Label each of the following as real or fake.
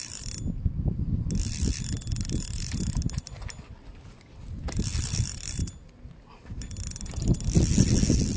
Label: real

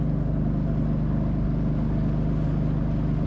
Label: real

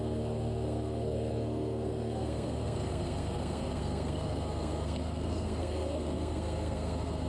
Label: fake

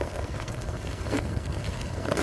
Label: fake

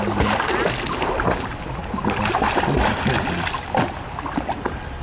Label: real